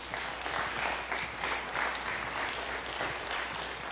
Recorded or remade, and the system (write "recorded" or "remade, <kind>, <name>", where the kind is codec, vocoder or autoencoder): recorded